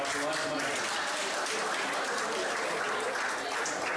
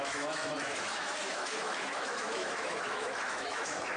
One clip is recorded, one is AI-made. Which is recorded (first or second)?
first